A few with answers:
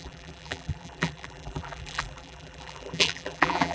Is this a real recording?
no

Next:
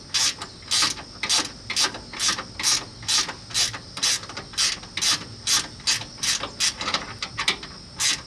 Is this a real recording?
yes